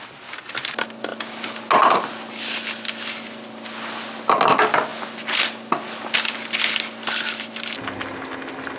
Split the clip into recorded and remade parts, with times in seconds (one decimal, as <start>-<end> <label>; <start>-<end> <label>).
0.0-8.8 recorded